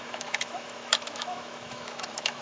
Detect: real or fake fake